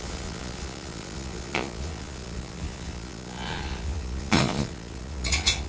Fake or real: fake